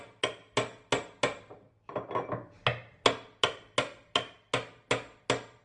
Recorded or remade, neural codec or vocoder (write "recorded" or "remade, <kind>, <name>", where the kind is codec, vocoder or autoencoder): recorded